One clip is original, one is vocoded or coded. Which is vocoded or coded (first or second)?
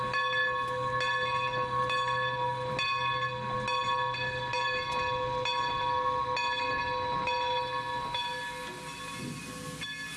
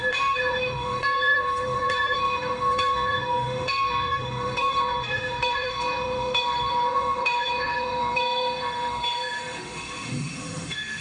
second